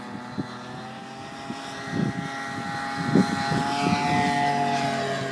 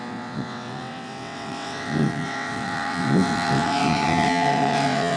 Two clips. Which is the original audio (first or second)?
first